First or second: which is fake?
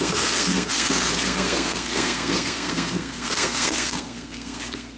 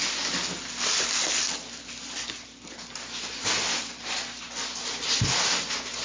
first